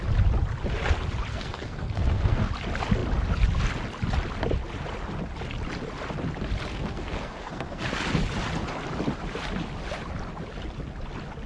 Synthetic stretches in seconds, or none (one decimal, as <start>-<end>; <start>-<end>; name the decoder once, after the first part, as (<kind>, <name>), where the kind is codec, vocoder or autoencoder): 1.3-2.5 (codec, SNAC); 6.7-7.8